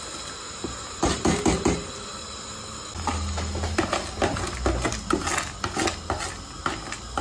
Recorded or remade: recorded